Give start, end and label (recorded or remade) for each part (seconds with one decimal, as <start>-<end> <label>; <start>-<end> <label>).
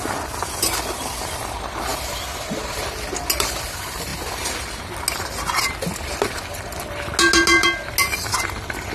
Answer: 0.0-8.9 recorded